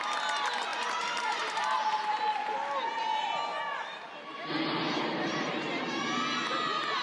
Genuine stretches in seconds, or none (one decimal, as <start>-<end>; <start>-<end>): 0.0-0.7; 1.6-5.3; 6.0-7.0